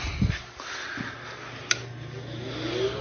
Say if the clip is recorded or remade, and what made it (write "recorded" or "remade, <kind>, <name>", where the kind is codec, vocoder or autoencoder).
recorded